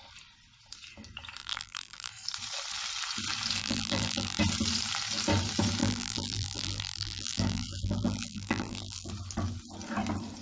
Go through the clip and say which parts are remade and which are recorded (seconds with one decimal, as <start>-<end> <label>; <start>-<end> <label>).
0.0-1.4 recorded; 1.4-2.1 remade; 2.1-3.6 recorded; 3.6-4.4 remade; 4.4-5.8 recorded; 5.8-9.1 remade; 9.1-10.4 recorded